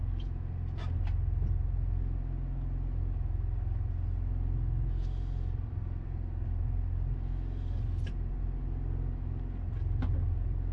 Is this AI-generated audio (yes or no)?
no